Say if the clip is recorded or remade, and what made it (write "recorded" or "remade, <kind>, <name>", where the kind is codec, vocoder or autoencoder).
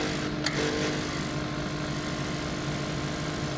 recorded